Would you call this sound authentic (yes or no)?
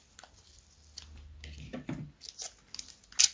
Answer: yes